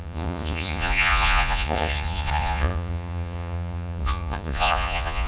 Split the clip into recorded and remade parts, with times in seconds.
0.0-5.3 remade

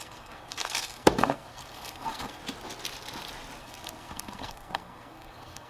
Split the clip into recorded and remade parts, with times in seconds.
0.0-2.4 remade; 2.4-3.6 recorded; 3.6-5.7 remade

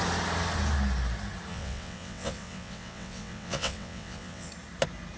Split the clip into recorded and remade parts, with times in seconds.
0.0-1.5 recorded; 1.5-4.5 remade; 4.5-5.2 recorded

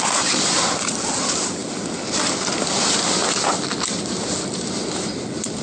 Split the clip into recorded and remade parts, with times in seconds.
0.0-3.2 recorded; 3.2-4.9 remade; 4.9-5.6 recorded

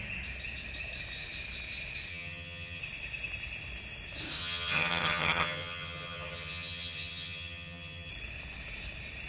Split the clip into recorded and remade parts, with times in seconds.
0.0-2.1 recorded; 2.1-2.8 remade; 2.8-4.4 recorded; 4.4-8.1 remade; 8.1-9.3 recorded